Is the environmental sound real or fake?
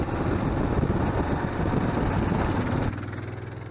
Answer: real